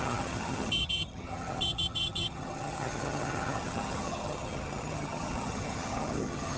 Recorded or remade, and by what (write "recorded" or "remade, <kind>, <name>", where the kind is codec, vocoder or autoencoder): remade, vocoder, HiFi-GAN